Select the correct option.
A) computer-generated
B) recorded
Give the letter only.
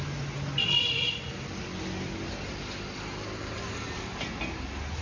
B